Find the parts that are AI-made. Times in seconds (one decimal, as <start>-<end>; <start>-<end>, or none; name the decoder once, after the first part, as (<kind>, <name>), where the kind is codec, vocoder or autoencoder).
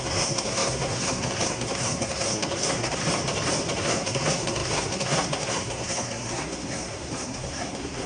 0.0-3.0 (codec, SNAC); 3.8-8.1